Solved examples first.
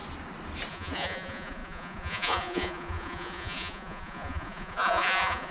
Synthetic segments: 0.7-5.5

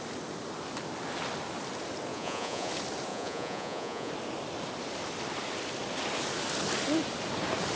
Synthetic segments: 2.1-2.7; 3.1-4.1

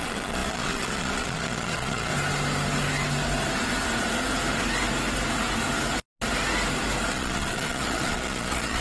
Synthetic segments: 0.0-2.1; 7.1-8.8

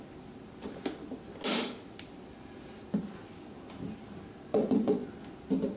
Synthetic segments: 4.5-5.1

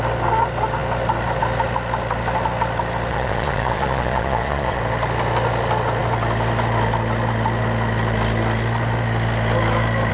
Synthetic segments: 3.1-4.8